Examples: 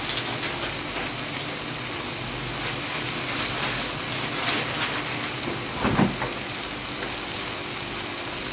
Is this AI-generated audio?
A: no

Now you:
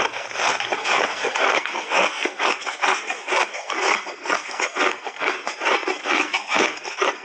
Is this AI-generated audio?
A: yes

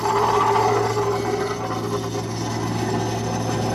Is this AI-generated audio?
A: no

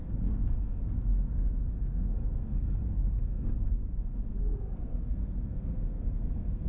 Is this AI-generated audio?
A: yes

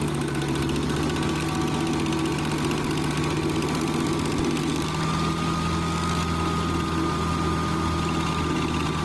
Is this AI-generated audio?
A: no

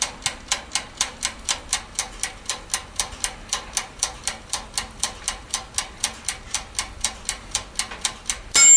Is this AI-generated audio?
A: no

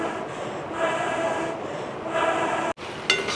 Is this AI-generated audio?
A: no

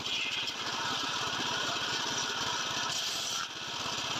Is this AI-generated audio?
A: no